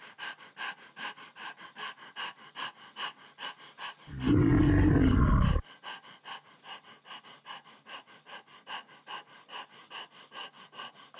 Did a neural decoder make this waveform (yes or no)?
no